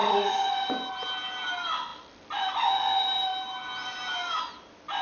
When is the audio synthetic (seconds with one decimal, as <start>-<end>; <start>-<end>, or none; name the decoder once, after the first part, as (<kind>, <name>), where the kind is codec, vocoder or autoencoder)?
0.0-0.7 (vocoder, Vocos)